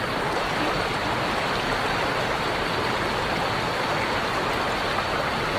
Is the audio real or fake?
real